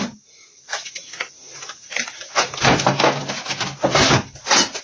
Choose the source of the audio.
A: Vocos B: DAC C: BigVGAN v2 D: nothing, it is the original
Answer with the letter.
D